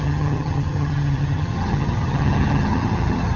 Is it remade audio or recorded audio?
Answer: remade